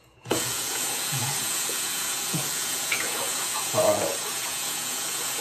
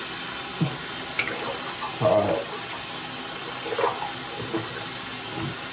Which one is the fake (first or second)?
first